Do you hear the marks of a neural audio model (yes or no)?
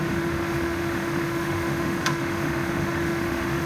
yes